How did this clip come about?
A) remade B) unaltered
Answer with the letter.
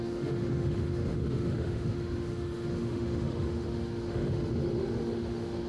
A